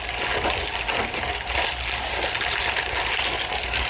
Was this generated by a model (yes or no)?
no